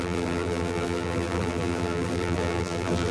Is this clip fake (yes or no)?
yes